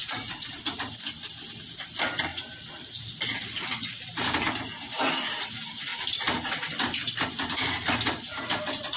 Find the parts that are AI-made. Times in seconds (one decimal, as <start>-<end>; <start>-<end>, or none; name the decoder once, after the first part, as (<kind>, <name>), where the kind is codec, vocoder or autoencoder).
none